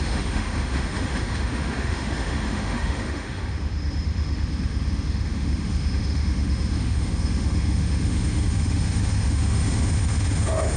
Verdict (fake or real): fake